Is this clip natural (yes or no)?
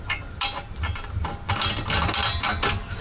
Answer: yes